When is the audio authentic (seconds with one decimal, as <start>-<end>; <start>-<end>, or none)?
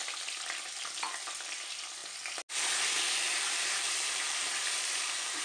0.0-3.2